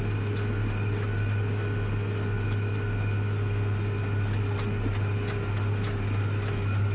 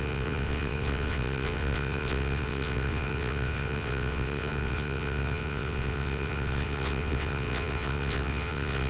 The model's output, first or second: second